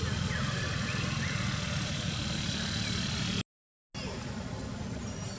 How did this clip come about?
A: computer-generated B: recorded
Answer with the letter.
B